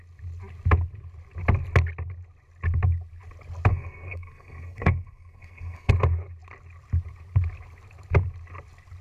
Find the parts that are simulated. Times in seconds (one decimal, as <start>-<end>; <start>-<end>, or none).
3.7-5.9